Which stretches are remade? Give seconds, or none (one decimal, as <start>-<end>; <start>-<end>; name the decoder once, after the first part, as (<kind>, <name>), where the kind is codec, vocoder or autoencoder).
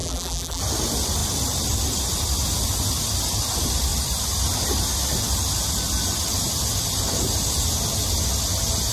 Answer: 0.0-0.6 (vocoder, BigVGAN v2)